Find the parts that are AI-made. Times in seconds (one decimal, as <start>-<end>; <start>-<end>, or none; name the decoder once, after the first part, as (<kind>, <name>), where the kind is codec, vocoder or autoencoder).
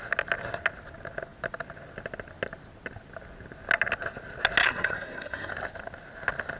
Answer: 4.6-5.5 (codec, SNAC)